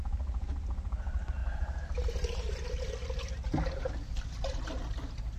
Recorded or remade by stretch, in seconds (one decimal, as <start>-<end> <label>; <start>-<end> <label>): 0.0-5.4 recorded